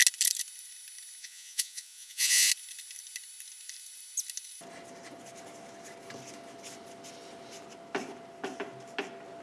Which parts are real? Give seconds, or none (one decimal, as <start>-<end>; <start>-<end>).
0.0-1.2; 2.5-9.4